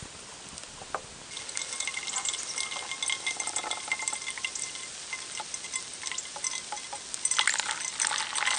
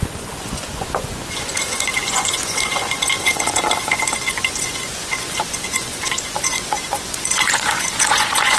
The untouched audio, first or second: first